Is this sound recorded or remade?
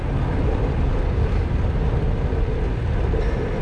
recorded